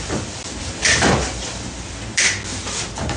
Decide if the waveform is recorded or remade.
remade